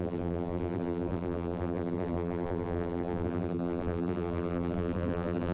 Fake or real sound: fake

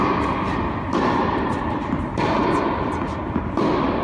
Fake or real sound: real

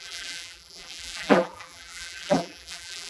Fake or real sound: fake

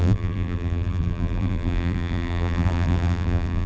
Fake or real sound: fake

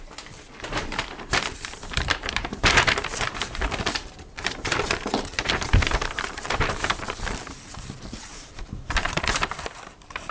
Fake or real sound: fake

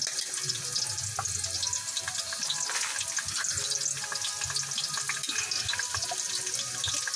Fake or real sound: real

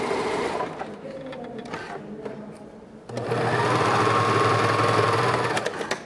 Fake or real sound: real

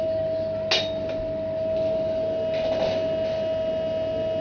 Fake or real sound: real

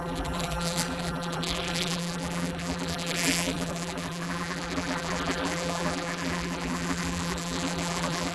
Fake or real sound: fake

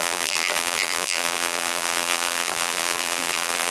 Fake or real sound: fake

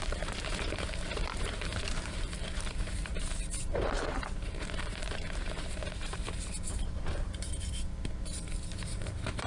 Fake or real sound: fake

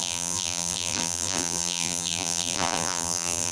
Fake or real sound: fake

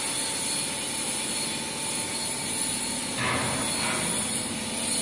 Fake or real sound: real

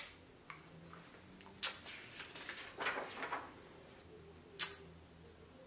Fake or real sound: real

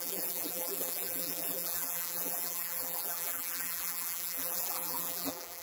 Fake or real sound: fake